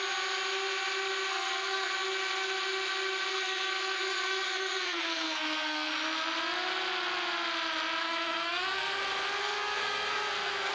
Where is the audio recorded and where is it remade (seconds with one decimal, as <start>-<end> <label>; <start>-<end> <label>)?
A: 0.0-1.3 recorded; 1.3-1.9 remade; 1.9-3.3 recorded; 3.3-5.9 remade; 5.9-8.0 recorded; 8.0-9.0 remade; 9.0-9.4 recorded; 9.4-10.7 remade